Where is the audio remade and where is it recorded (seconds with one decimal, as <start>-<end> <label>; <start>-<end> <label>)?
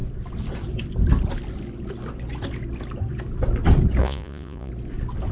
0.0-4.0 recorded; 4.0-4.7 remade; 4.7-5.3 recorded